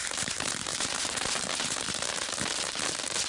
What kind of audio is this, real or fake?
fake